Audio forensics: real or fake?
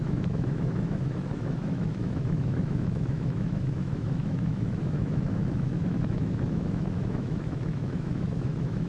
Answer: fake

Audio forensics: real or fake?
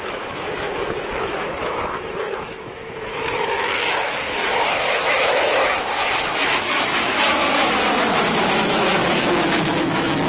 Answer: fake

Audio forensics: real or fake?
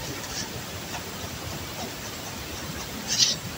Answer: real